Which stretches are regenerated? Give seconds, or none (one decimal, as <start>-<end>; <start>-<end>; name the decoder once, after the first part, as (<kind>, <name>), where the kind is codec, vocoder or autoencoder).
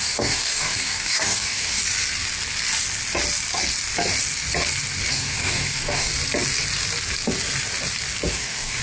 0.0-1.8 (codec, DAC); 5.1-6.1; 8.3-8.8